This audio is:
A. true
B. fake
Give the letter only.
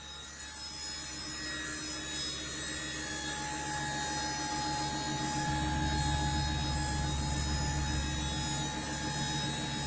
A